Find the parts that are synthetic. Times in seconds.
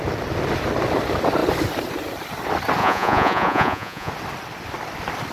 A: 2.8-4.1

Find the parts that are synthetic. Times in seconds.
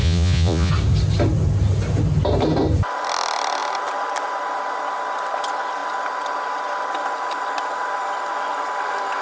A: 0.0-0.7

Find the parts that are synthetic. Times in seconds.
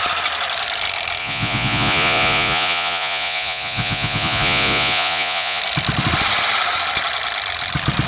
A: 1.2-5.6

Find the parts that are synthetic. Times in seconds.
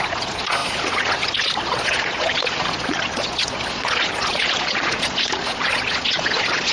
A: 0.0-6.7